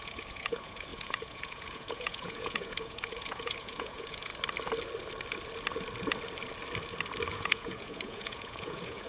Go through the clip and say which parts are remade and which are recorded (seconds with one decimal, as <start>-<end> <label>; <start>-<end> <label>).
0.0-4.3 remade; 4.3-7.3 recorded; 7.3-9.1 remade